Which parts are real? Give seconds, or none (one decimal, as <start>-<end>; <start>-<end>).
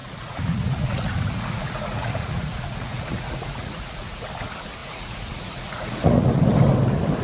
4.3-4.8; 6.4-7.2